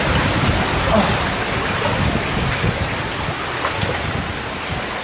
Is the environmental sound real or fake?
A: real